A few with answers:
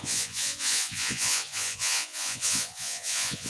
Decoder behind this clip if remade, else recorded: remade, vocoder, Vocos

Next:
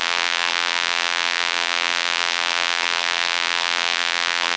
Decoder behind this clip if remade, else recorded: remade, vocoder, BigVGAN v2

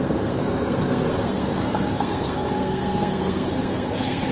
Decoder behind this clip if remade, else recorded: remade, codec, SNAC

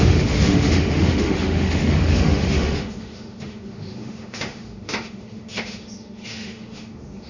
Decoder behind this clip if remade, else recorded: remade, autoencoder, DAC-VAE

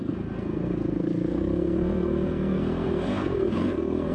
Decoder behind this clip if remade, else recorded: remade, codec, SNAC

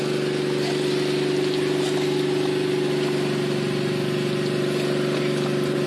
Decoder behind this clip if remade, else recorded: recorded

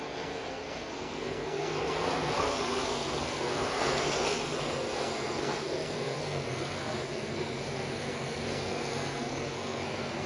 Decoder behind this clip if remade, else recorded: remade, codec, SNAC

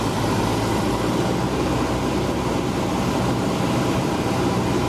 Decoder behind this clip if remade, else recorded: recorded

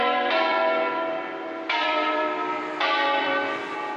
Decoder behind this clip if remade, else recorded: remade, vocoder, BigVGAN v2